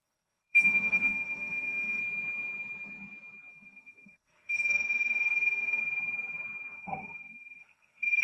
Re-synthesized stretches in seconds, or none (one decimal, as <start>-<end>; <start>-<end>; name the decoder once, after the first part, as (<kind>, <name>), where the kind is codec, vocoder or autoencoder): 0.0-2.0 (codec, SNAC); 3.5-5.8; 6.7-8.2